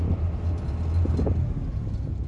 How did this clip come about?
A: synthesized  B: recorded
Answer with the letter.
B